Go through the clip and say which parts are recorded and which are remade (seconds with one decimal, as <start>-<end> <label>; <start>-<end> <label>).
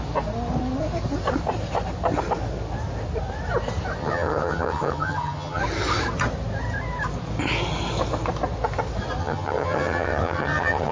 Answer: 0.0-4.0 recorded; 4.0-5.6 remade; 5.6-9.2 recorded; 9.2-10.9 remade